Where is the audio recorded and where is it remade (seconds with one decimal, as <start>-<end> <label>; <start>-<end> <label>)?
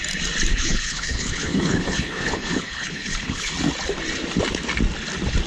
0.0-0.5 recorded; 0.5-3.5 remade; 3.5-5.5 recorded